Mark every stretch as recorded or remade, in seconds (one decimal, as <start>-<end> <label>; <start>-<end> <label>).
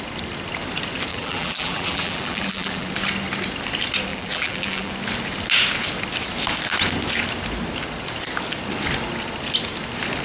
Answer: 0.0-1.1 recorded; 1.1-2.9 remade; 2.9-4.1 recorded; 4.1-4.9 remade; 4.9-10.2 recorded